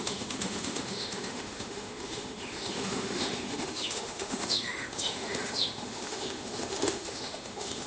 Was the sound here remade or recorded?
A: remade